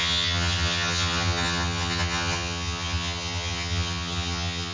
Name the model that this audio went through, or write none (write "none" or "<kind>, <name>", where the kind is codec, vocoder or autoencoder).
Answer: vocoder, HiFi-GAN